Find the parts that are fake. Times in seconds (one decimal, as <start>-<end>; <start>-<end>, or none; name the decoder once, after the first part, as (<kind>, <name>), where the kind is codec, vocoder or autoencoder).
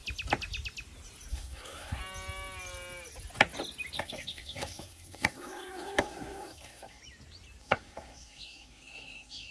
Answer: 1.3-2.0 (codec, SNAC); 4.0-7.0; 7.6-9.5